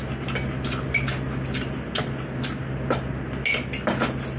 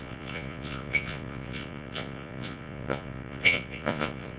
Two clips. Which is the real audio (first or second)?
first